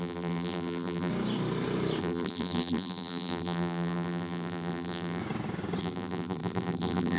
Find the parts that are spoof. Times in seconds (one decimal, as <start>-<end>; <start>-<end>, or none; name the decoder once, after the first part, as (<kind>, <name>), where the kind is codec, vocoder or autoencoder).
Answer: 0.0-1.1 (vocoder, BigVGAN v2); 2.0-5.2; 5.8-7.2

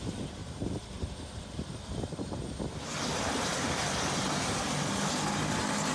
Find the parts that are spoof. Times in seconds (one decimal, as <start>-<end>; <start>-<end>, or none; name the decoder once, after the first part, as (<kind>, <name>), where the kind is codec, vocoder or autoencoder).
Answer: 0.4-1.4 (vocoder, BigVGAN v2)